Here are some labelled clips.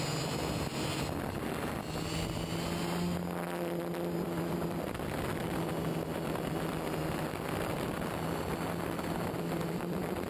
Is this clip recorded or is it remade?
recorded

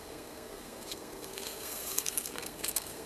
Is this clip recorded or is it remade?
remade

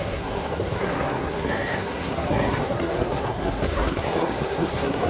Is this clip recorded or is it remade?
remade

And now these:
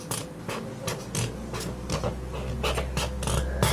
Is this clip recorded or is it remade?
recorded